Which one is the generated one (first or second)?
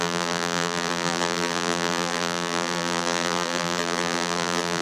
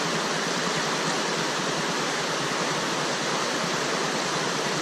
first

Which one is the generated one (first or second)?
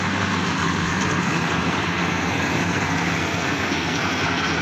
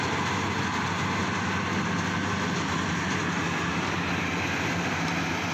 first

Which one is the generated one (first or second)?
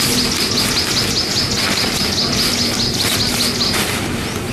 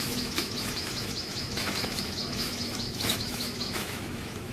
second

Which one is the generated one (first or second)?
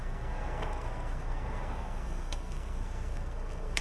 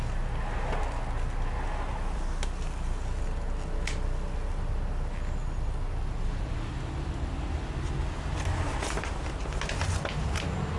first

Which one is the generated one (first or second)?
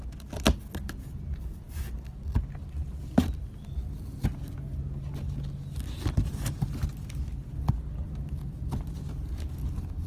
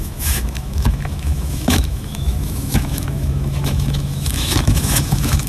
second